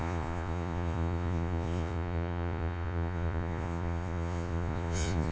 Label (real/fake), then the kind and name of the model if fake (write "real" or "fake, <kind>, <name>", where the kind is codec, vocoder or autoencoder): fake, vocoder, Vocos